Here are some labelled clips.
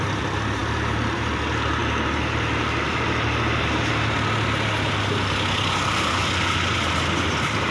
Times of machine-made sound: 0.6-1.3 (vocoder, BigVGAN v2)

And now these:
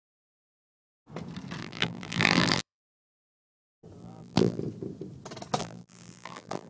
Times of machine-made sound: 1.6-2.8 (vocoder, BigVGAN v2); 4.0-4.6; 5.6-6.7

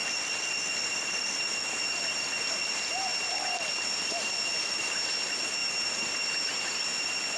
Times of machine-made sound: 5.6-6.6 (vocoder, BigVGAN v2)

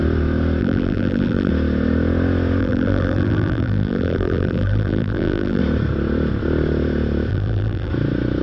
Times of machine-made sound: 0.6-1.5 (vocoder, BigVGAN v2); 2.6-5.6; 7.3-7.9

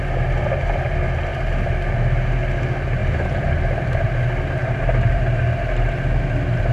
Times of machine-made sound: 3.0-3.5 (vocoder, BigVGAN v2); 4.6-5.4

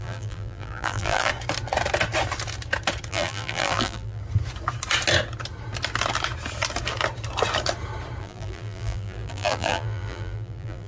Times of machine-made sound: 0.0-1.3 (vocoder, BigVGAN v2); 3.1-4.2; 8.2-10.9

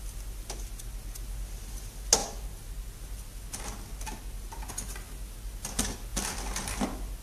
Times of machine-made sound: none